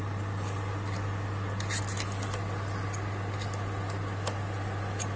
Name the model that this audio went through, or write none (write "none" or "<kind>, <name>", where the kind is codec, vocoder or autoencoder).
none